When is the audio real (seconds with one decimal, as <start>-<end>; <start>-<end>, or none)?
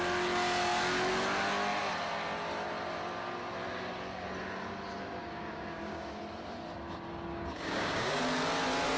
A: 0.0-5.2; 6.2-7.3; 8.2-9.0